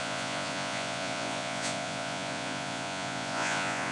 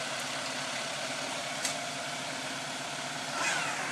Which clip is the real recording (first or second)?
second